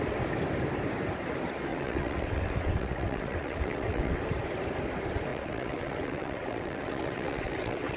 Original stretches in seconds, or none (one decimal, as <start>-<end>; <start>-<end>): 0.0-1.7; 4.2-5.3